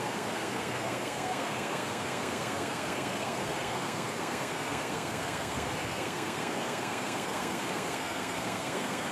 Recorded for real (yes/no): no